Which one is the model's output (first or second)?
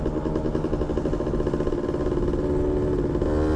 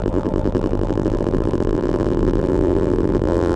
second